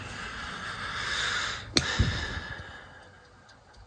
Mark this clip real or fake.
real